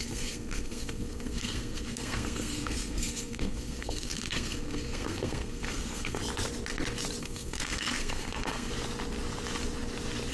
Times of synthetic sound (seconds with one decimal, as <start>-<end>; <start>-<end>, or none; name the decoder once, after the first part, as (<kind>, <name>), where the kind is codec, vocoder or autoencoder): 0.0-6.2 (codec, SNAC); 7.2-8.7